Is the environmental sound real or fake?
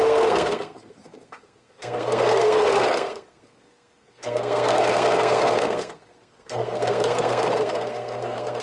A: fake